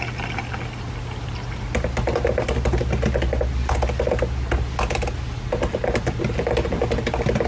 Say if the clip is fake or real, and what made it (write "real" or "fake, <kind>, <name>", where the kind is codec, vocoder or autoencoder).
real